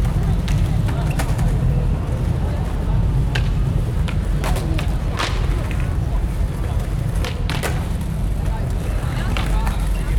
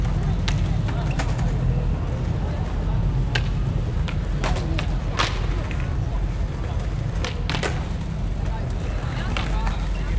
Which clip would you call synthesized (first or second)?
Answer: first